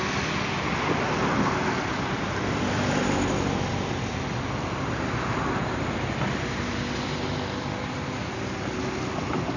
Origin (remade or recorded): recorded